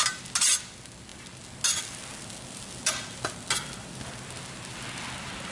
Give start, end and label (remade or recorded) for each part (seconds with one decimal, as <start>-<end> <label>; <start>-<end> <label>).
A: 0.0-5.5 recorded